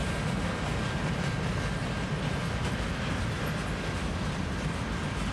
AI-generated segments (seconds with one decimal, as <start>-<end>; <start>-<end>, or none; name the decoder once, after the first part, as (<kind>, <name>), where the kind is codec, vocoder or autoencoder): 3.6-4.2 (vocoder, BigVGAN v2)